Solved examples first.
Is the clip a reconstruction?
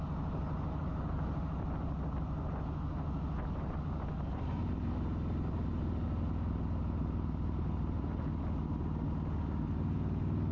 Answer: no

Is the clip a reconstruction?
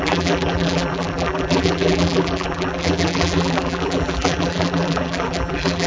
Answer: yes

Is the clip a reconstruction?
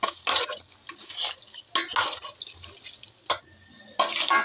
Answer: no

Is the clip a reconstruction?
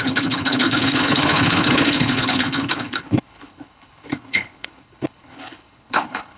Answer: yes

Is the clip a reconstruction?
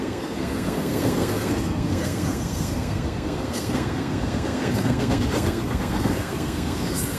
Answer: yes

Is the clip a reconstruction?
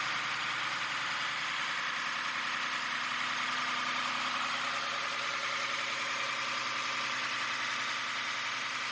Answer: no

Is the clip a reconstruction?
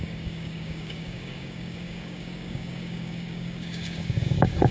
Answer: yes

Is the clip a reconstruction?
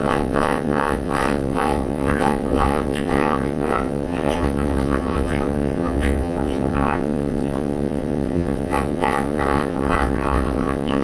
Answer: yes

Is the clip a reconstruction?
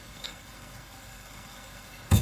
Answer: yes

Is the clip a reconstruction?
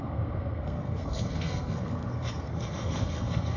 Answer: yes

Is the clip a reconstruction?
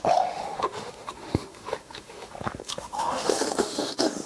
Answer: yes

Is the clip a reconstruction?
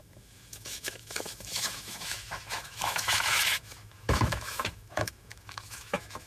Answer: yes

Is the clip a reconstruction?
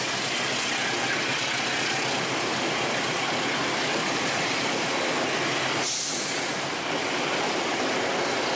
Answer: no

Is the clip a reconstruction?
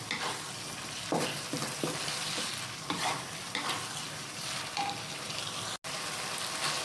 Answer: no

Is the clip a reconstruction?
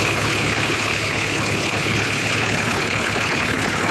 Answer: yes